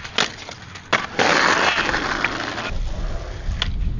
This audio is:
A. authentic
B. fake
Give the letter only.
A